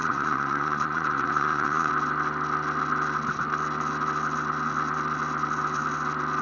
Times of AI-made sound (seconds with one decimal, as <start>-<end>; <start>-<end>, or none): 0.0-1.9